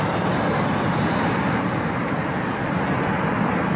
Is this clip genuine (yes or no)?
no